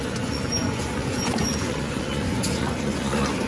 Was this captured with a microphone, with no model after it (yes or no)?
no